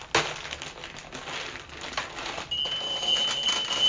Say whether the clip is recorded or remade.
recorded